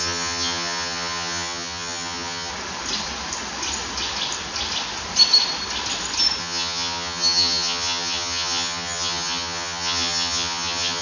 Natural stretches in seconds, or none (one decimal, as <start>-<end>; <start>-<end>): 2.5-6.4